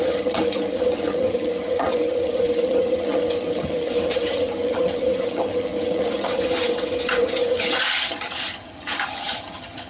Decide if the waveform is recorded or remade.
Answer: remade